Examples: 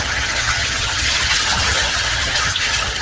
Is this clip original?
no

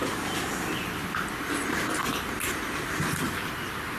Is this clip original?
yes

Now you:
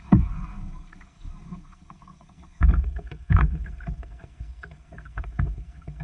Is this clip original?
no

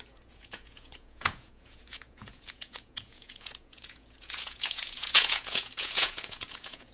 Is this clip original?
no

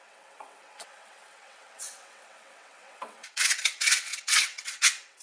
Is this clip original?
no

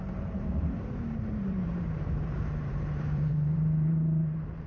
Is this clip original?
no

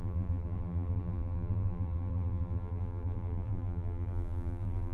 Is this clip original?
no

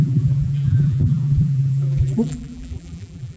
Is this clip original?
no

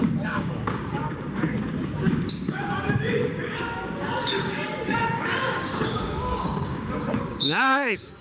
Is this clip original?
no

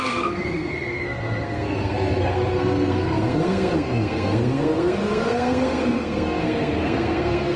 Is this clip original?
no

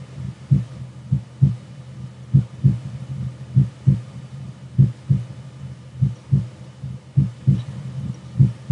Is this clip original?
yes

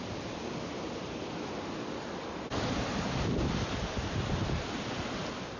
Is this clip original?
yes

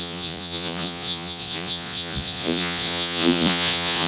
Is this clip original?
no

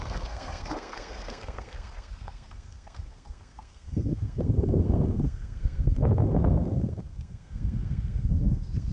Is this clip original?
no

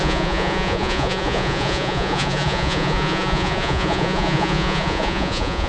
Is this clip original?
no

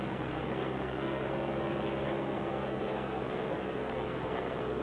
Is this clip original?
no